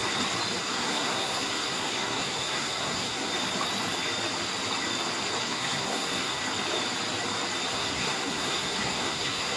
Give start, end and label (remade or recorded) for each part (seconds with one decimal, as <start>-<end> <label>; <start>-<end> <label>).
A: 0.0-0.6 recorded; 0.6-3.3 remade; 3.3-5.4 recorded; 5.4-6.4 remade; 6.4-7.7 recorded; 7.7-9.6 remade